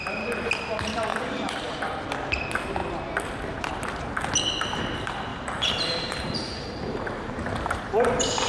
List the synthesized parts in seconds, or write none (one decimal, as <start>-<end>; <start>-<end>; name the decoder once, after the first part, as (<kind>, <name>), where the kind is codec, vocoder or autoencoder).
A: 1.1-1.8 (vocoder, BigVGAN v2); 5.3-7.8